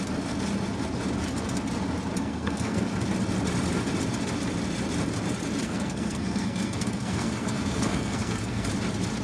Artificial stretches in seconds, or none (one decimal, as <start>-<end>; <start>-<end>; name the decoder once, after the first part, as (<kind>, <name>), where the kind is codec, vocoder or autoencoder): 2.2-2.9 (codec, SNAC); 5.6-8.7